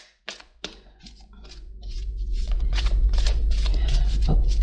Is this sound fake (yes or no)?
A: yes